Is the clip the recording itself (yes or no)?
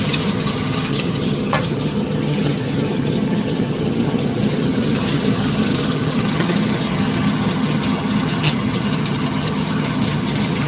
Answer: no